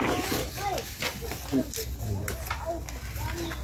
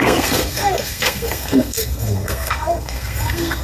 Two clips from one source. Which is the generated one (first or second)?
second